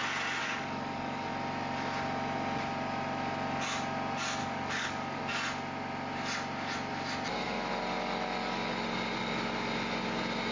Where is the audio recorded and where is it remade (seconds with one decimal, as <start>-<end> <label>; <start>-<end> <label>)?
0.0-0.4 recorded; 0.4-1.3 remade; 1.3-4.4 recorded; 4.4-5.2 remade; 5.2-10.5 recorded